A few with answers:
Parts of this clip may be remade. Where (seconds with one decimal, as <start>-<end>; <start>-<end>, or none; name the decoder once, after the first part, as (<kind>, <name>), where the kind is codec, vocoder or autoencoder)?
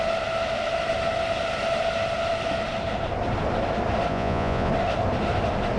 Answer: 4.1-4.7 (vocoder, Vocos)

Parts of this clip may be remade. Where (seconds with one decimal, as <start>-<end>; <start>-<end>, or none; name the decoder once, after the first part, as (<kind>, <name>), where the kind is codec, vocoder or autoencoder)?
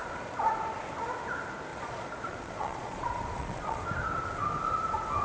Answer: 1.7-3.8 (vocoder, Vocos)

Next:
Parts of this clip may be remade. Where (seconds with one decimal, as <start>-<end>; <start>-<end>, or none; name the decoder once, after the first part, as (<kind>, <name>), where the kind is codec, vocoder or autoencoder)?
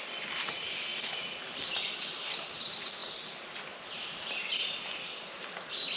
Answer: none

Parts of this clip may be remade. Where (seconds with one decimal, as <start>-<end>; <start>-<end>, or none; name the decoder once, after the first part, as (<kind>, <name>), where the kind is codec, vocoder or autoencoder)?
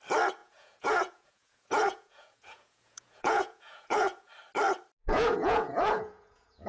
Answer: 0.4-4.3 (vocoder, Vocos); 5.0-6.7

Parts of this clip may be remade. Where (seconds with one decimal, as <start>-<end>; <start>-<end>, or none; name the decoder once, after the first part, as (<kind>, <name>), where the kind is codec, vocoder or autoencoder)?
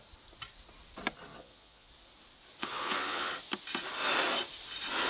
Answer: 1.3-1.9 (vocoder, Vocos); 2.6-3.3